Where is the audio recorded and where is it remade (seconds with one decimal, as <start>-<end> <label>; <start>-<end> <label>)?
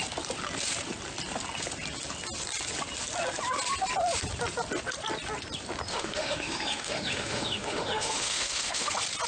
0.0-5.9 recorded; 5.9-8.9 remade; 8.9-9.3 recorded